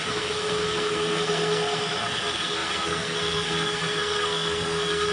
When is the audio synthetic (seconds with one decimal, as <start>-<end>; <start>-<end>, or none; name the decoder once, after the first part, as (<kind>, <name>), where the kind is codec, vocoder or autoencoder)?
0.0-5.1 (codec, SNAC)